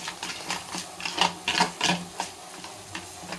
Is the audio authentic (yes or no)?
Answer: yes